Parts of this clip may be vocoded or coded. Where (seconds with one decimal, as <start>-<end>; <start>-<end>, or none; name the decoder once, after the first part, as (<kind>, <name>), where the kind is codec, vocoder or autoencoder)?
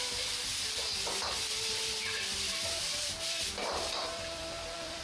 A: 0.0-0.5 (vocoder, BigVGAN v2); 3.5-5.0